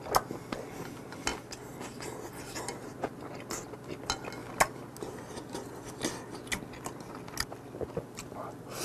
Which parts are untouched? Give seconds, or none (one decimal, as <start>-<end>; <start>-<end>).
0.0-8.8